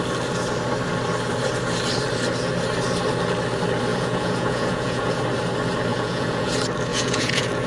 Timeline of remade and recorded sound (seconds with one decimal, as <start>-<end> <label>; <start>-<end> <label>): 0.0-3.9 recorded; 3.9-5.2 remade; 5.2-5.9 recorded; 5.9-6.5 remade; 6.5-6.9 recorded; 6.9-7.7 remade